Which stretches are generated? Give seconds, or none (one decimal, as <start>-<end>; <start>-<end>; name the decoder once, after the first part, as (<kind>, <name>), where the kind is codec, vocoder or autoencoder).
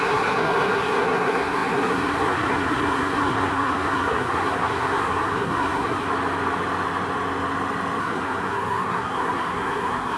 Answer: 0.0-6.1 (codec, SNAC); 8.0-10.2